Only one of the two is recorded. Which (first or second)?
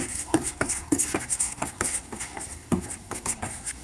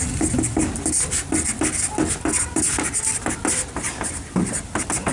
second